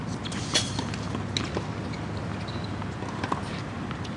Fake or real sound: real